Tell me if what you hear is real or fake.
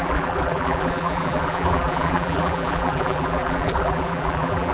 fake